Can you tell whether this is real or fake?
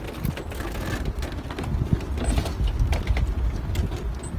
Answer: real